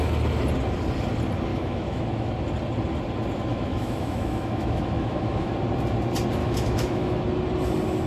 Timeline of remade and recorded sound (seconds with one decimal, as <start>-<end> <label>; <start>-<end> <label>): 0.0-1.5 recorded; 1.5-2.3 remade; 2.3-3.5 recorded; 3.5-5.5 remade; 5.5-6.4 recorded; 6.4-7.2 remade; 7.2-8.1 recorded